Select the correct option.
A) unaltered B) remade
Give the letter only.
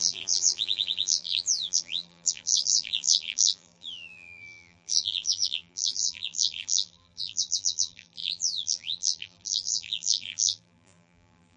B